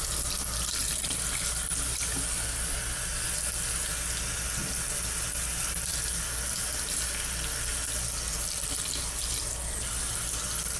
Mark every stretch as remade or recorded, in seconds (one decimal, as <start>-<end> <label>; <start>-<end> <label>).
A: 0.0-10.8 recorded